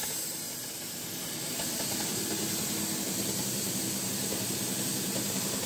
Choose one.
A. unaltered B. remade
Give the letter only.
A